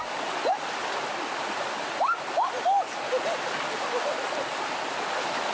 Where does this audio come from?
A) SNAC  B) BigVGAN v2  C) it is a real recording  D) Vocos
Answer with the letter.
C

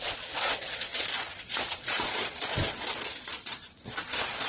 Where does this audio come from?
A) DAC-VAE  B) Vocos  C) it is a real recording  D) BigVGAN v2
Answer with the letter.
B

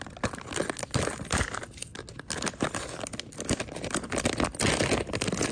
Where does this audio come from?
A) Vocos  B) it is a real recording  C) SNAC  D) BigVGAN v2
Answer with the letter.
B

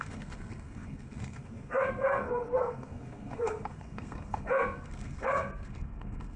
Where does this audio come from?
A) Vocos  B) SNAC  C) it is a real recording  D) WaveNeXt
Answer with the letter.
B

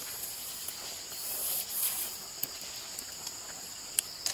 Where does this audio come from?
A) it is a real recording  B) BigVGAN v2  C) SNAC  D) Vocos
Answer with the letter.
A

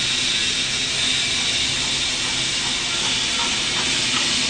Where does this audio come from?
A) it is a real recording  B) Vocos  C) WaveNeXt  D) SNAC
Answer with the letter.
A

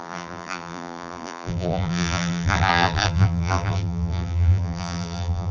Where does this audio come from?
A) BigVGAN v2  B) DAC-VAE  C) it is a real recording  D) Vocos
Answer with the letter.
A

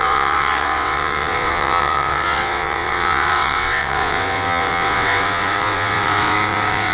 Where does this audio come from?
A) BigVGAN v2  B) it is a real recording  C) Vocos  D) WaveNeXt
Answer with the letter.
D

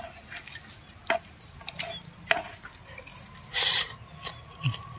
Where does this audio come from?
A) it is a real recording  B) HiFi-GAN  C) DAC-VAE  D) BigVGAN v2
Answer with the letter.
A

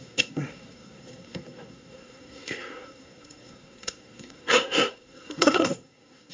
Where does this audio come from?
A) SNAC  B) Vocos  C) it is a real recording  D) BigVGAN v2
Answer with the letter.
A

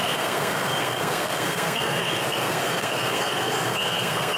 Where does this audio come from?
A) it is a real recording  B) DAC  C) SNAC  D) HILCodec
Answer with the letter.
C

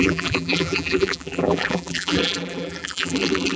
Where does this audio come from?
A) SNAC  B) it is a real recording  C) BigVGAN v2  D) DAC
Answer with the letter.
C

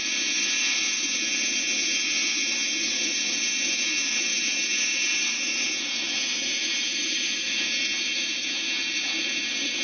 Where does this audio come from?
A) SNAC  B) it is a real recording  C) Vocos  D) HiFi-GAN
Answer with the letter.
C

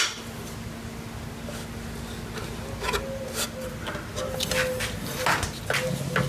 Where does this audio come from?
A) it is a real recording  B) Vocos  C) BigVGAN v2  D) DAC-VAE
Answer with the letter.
A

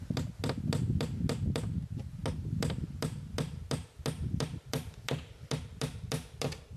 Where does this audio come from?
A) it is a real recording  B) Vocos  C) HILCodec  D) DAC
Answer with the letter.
A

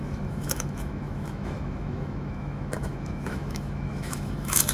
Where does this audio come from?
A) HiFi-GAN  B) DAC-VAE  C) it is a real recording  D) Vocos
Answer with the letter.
B